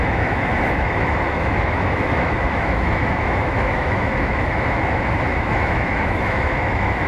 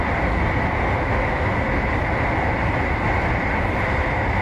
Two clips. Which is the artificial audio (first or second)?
first